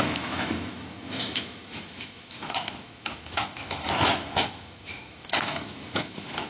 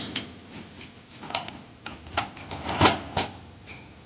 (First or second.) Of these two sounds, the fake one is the first